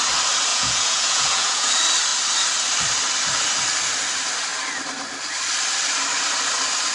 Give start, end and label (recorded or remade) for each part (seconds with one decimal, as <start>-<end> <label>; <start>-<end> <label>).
0.0-0.5 recorded; 0.5-1.7 remade; 1.7-6.9 recorded